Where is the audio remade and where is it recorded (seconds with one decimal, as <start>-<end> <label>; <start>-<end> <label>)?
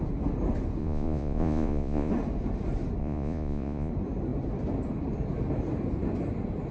0.0-0.8 recorded; 0.8-2.1 remade; 2.1-3.0 recorded; 3.0-3.9 remade; 3.9-6.7 recorded